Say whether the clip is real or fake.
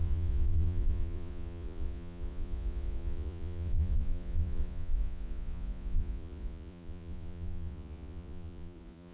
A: fake